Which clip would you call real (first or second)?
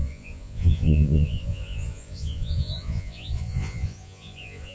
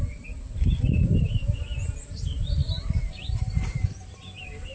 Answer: second